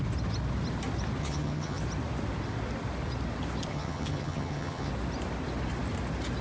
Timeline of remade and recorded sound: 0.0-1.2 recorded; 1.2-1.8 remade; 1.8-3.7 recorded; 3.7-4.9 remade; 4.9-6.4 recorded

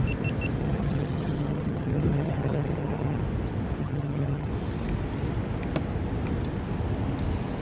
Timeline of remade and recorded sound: 0.0-0.6 recorded; 0.6-3.2 remade; 3.2-3.8 recorded; 3.8-4.5 remade; 4.5-7.6 recorded